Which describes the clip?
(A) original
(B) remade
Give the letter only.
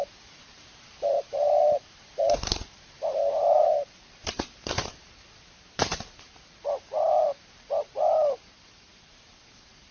B